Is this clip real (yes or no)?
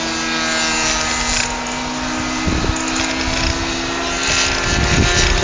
yes